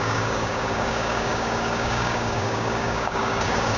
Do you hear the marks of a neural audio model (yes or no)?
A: yes